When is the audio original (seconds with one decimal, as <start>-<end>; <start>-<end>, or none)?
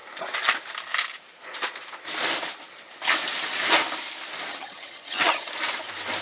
0.0-4.5; 5.5-6.2